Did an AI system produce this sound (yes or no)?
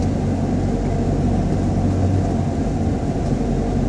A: no